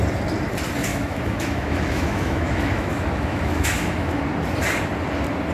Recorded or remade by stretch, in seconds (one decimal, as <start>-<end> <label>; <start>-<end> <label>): 0.0-0.9 recorded; 0.9-4.2 remade; 4.2-5.5 recorded